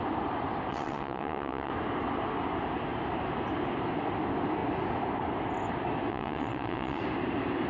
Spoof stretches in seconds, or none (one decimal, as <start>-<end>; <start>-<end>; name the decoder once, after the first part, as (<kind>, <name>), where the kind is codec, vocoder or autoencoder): 0.7-1.7 (vocoder, WaveNeXt); 6.1-7.0